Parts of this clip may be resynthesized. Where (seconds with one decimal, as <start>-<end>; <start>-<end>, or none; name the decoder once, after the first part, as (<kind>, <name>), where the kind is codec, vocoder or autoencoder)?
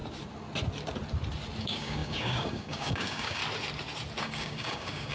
1.6-3.4 (codec, DAC); 4.2-5.1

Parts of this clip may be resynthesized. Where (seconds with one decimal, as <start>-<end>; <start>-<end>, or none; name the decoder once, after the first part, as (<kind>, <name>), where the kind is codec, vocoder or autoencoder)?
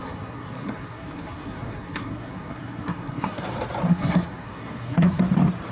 0.0-3.4 (codec, SNAC); 3.9-5.2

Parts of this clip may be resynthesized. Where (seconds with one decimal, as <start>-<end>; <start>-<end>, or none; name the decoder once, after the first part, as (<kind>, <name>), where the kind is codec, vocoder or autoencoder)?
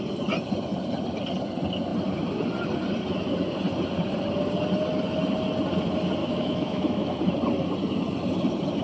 6.2-7.2 (autoencoder, DAC-VAE)